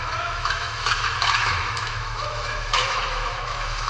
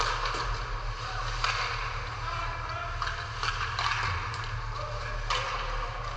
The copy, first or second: first